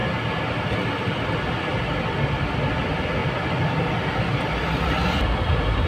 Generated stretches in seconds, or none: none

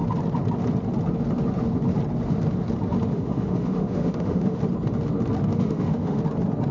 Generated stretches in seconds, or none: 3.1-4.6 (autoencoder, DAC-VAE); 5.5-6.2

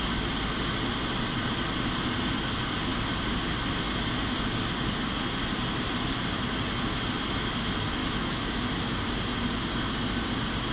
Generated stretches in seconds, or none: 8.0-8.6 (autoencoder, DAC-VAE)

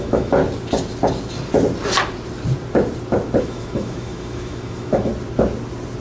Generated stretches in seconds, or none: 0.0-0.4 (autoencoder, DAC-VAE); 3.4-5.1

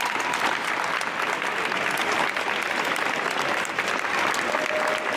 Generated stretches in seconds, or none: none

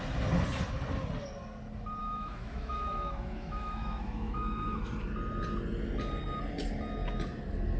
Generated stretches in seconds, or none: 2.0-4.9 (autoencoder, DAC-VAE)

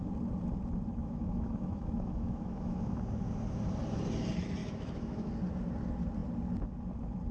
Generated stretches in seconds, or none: 1.0-3.0 (autoencoder, DAC-VAE); 4.6-5.3